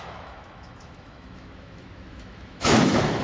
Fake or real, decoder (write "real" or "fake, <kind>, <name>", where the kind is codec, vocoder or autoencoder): fake, autoencoder, DAC-VAE